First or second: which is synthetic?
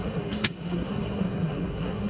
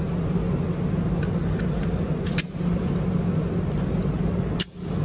first